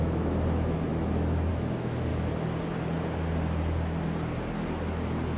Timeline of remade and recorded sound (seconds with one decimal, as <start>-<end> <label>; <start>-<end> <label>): 0.0-2.1 remade; 2.1-5.4 recorded